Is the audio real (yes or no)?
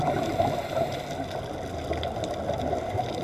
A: yes